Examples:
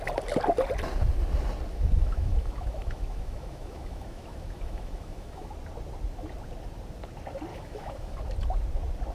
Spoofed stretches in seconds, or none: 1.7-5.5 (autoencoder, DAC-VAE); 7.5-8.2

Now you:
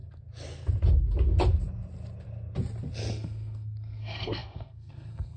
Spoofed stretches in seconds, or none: 3.1-5.4 (codec, SNAC)